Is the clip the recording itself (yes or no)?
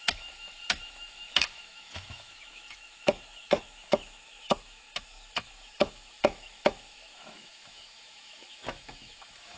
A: no